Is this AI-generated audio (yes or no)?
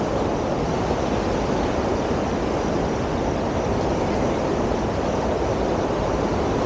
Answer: no